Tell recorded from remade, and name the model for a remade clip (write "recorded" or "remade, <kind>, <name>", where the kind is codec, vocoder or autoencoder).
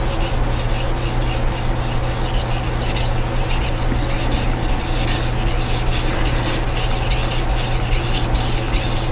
recorded